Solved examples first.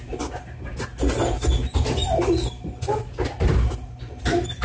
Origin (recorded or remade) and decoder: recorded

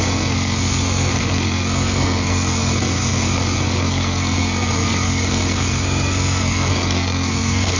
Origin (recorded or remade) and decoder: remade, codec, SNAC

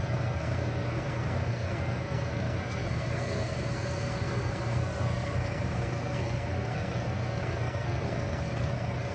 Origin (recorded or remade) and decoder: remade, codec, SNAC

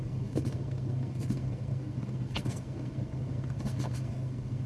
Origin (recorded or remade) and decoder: remade, codec, SNAC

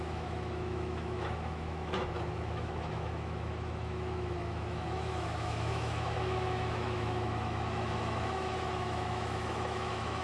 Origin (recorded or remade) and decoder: remade, autoencoder, DAC-VAE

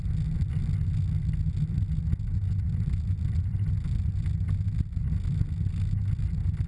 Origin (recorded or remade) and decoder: recorded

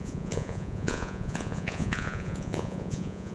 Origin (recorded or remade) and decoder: remade, vocoder, Vocos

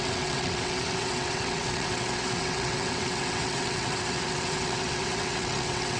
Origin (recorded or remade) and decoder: remade, vocoder, WaveNeXt